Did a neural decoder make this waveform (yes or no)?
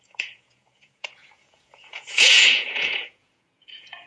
yes